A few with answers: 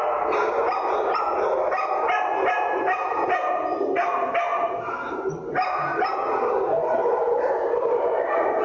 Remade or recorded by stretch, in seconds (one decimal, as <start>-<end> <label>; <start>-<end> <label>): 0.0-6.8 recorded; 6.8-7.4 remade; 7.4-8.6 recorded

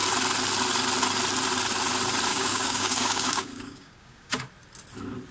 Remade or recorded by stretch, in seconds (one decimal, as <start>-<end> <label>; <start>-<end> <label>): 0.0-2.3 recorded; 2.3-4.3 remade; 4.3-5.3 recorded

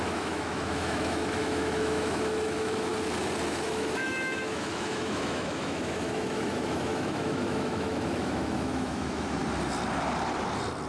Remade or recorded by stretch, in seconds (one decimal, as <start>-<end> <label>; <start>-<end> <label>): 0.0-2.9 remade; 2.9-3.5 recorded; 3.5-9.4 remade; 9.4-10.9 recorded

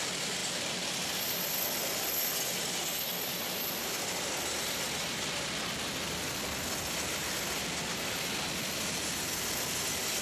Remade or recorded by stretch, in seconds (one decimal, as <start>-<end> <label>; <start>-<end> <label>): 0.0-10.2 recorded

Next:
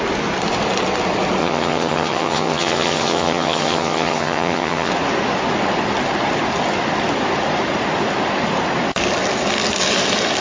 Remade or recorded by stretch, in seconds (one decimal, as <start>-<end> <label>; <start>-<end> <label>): 0.0-1.4 recorded; 1.4-4.9 remade; 4.9-10.4 recorded

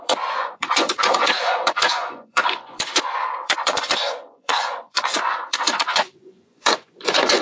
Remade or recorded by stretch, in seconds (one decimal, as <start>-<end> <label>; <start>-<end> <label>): 0.0-7.4 remade

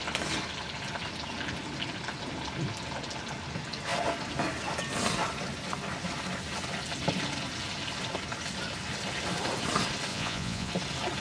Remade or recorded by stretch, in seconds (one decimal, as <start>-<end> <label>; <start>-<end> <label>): 0.0-10.1 recorded; 10.1-10.7 remade; 10.7-11.2 recorded

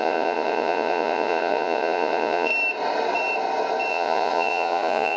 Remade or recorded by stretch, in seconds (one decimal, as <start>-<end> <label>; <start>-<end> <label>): 0.0-2.5 remade; 2.5-3.9 recorded; 3.9-5.2 remade